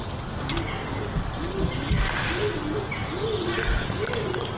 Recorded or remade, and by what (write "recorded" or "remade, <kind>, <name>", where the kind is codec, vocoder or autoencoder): recorded